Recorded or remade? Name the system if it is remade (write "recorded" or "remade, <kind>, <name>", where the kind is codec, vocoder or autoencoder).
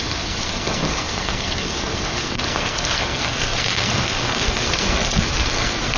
remade, codec, SNAC